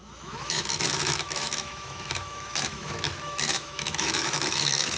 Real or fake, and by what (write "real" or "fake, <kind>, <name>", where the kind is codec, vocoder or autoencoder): fake, autoencoder, DAC-VAE